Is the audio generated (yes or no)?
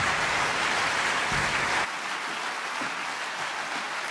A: no